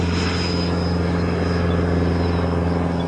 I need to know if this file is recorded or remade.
recorded